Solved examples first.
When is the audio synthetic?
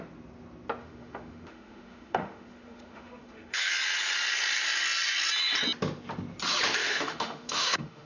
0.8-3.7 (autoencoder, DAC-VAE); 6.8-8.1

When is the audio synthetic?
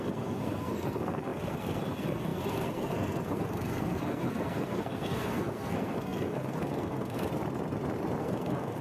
0.0-7.3 (codec, SNAC); 8.2-8.8